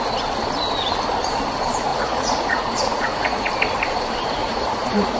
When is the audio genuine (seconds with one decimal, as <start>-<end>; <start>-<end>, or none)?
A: 0.0-1.9; 3.5-4.4